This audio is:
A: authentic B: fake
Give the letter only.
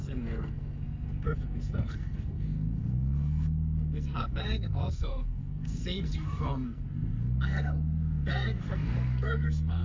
B